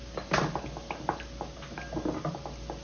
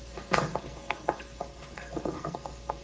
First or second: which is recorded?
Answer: first